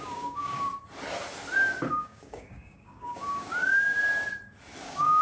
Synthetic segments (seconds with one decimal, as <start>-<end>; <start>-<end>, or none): 0.0-0.7; 1.9-4.0; 4.8-5.2